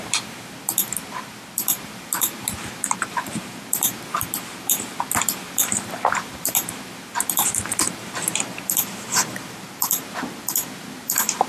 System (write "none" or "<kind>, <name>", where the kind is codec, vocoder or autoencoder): vocoder, BigVGAN v2